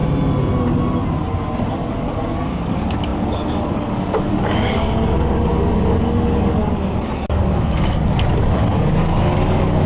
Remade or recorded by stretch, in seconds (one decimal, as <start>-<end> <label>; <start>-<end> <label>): 0.0-1.7 recorded; 1.7-9.9 remade